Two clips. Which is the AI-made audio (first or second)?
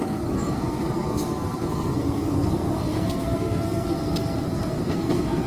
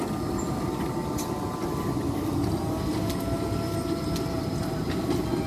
first